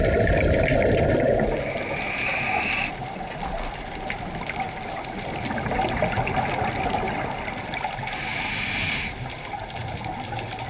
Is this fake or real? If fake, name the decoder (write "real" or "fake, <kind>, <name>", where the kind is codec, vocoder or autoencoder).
real